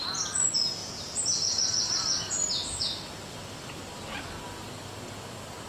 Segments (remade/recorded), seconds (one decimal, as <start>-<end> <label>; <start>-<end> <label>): 0.0-5.7 recorded